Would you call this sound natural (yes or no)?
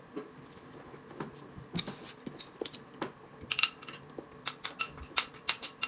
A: yes